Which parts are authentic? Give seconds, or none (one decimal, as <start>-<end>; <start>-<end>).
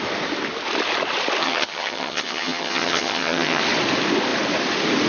0.0-1.4; 3.6-5.1